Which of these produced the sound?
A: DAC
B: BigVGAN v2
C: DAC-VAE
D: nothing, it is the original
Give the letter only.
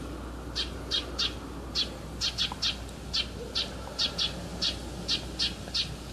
D